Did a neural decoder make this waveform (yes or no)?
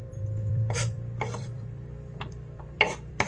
yes